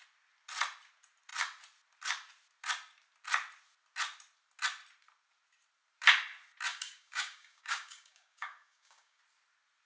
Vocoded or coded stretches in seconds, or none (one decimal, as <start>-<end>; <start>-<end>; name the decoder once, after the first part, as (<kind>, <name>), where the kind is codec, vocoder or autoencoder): 6.7-9.2 (codec, DAC)